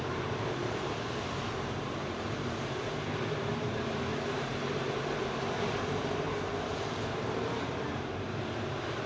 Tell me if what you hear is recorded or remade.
remade